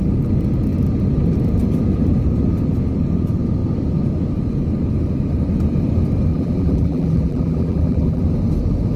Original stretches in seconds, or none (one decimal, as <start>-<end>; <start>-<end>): 0.0-6.3; 8.2-9.0